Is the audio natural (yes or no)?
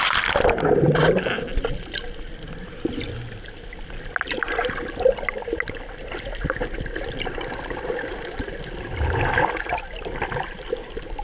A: yes